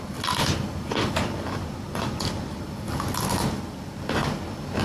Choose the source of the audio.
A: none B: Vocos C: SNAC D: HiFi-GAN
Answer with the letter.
A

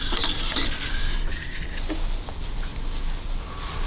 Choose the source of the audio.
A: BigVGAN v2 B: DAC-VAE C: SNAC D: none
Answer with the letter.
D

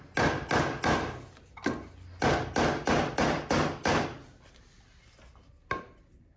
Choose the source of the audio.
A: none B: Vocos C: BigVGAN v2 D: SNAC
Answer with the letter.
A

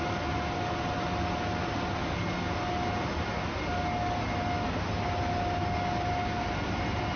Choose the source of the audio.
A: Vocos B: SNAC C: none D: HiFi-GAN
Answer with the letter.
C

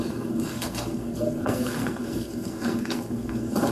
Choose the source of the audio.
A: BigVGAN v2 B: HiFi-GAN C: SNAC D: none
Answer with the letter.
C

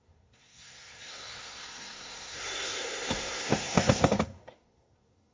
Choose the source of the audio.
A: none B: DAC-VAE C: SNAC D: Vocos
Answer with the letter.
C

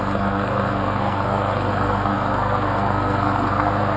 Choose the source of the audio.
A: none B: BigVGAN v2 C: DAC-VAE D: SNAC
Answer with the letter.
D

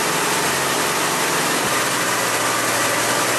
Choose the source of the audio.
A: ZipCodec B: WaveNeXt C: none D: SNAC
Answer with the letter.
C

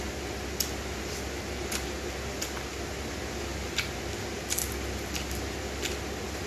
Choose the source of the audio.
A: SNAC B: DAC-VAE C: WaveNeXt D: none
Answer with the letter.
D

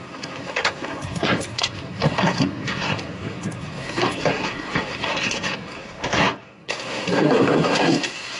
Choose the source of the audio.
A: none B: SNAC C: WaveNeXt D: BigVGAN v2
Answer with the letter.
B